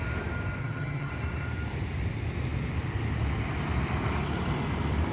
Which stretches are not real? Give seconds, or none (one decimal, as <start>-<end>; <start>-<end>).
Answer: 0.6-1.1